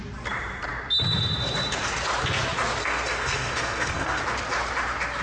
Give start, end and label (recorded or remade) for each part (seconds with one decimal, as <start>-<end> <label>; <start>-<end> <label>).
0.0-2.8 recorded; 2.8-4.2 remade; 4.2-5.2 recorded